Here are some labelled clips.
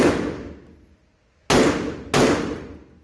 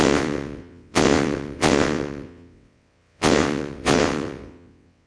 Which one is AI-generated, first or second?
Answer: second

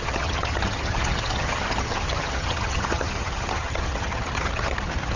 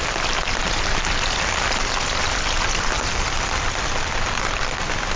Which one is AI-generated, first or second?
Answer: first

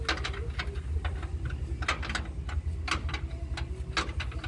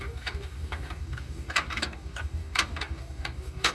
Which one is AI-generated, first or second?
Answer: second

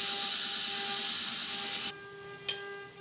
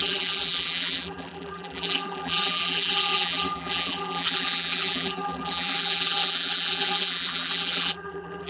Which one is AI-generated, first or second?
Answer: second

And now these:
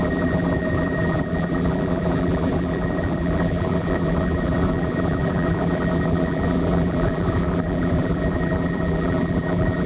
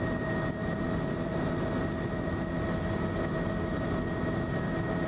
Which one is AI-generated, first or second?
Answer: first